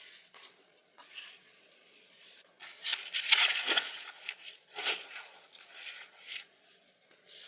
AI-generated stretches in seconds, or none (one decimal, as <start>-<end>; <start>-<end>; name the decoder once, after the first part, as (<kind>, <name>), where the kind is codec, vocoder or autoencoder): 0.0-7.5 (vocoder, Vocos)